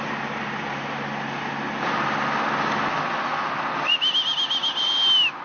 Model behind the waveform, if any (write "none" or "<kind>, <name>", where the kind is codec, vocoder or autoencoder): none